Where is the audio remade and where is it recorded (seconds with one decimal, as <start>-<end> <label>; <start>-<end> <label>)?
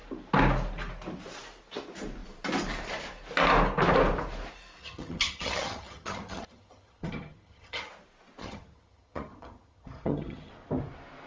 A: 0.0-4.8 recorded; 4.8-7.9 remade; 7.9-8.4 recorded; 8.4-10.5 remade; 10.5-11.3 recorded